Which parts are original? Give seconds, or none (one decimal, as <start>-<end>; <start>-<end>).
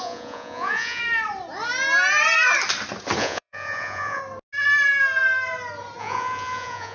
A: 1.0-3.2; 4.2-6.0